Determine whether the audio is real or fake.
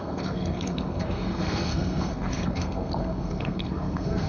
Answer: fake